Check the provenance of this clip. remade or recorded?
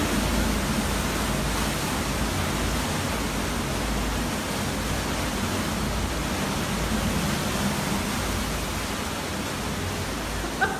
recorded